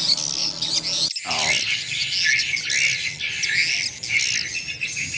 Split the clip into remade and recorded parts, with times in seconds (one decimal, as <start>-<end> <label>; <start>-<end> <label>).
0.0-5.2 recorded